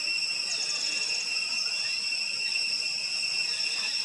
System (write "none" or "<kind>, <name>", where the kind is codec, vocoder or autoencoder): none